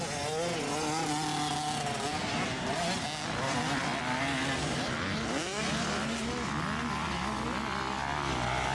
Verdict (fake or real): real